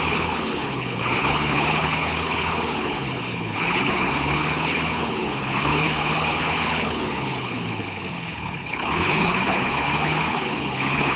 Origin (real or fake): fake